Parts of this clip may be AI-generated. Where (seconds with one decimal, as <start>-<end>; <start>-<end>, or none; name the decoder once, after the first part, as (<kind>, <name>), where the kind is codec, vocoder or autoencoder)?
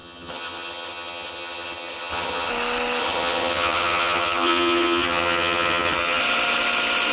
0.0-2.5 (vocoder, HiFi-GAN); 3.0-6.2